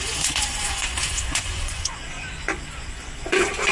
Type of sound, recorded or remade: remade